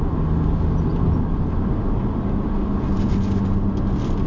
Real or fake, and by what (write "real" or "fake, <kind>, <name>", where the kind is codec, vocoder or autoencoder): real